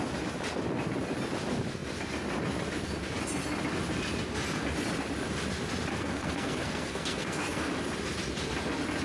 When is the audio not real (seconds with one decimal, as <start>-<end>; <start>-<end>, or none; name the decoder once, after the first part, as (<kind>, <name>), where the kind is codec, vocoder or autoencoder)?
5.9-7.7 (codec, SNAC)